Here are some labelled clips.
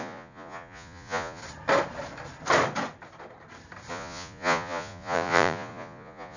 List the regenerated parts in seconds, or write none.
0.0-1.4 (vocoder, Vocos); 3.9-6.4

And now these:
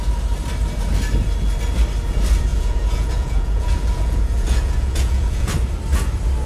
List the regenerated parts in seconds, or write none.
2.5-5.5 (vocoder, Vocos)

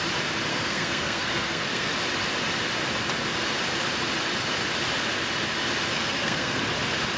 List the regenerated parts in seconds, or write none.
0.5-1.9 (codec, SNAC); 5.9-6.6

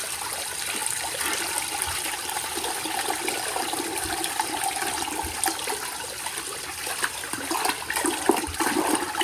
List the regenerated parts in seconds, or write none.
0.8-4.6 (vocoder, BigVGAN v2)

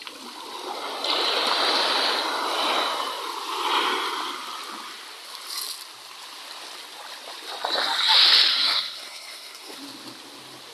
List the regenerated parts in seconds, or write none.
8.5-9.8 (codec, SNAC)

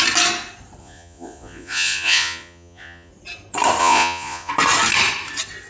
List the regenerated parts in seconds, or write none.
0.8-3.1 (vocoder, Vocos); 3.8-4.5

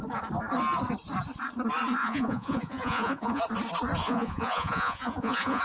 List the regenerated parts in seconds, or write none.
2.0-3.4 (vocoder, Vocos); 4.0-5.6